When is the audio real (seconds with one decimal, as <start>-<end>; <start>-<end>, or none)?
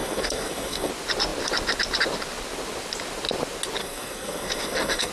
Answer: 0.9-3.8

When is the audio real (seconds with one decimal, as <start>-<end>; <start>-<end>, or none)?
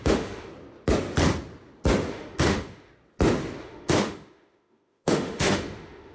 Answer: 0.5-2.1; 2.9-3.6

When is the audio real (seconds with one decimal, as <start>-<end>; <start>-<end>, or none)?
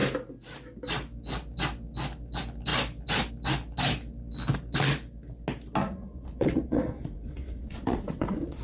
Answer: 0.0-5.8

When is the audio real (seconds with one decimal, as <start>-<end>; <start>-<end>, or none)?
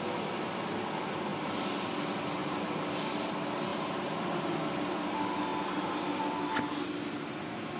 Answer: 0.0-1.3; 1.9-2.4; 3.0-3.7; 4.4-5.5; 6.0-7.8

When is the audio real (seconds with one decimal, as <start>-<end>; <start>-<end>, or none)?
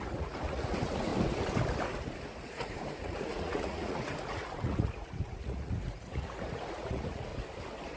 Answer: 1.1-2.4; 7.3-8.0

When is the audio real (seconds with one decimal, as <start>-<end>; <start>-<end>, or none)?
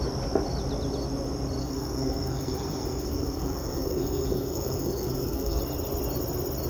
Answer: 0.0-1.6; 5.6-6.7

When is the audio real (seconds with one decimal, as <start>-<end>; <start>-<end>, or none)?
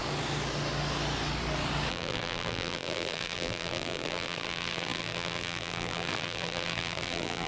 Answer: 0.0-1.9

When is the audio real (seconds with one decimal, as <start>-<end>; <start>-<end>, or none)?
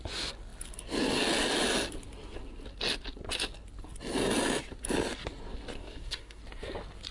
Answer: 0.0-5.8; 6.4-7.1